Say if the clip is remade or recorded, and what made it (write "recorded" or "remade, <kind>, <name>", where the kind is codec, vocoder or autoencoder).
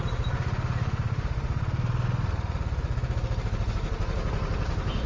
recorded